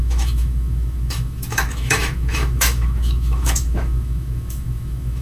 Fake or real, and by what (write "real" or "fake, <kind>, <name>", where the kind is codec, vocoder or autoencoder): fake, autoencoder, DAC-VAE